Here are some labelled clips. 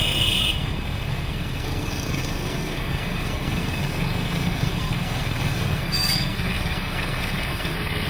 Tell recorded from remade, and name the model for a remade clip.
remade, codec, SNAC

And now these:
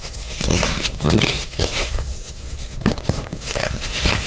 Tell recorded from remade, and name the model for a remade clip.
remade, codec, SNAC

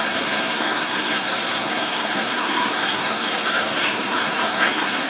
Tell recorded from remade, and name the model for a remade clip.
remade, codec, SNAC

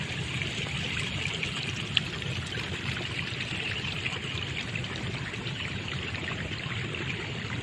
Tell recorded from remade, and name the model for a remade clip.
remade, vocoder, BigVGAN v2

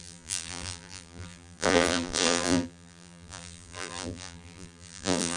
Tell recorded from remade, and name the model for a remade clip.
remade, vocoder, BigVGAN v2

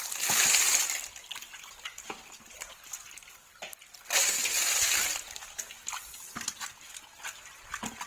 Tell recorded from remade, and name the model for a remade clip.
recorded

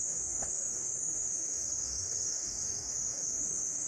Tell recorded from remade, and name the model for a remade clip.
remade, codec, DAC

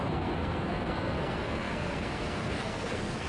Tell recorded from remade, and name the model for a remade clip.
remade, codec, SNAC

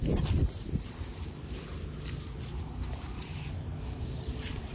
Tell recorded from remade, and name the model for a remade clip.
recorded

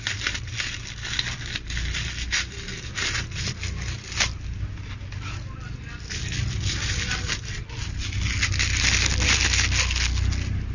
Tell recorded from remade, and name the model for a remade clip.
recorded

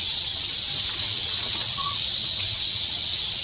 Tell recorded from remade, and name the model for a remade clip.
remade, vocoder, WaveNeXt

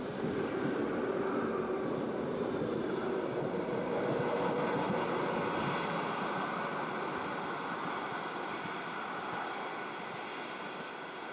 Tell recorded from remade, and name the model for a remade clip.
recorded